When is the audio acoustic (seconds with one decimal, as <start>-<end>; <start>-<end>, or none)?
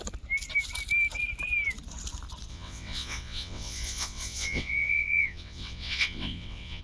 0.0-2.5